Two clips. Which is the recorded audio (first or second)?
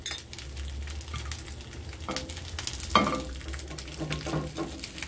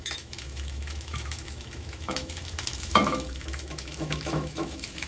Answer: first